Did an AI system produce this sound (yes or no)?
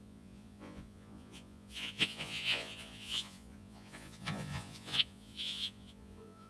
yes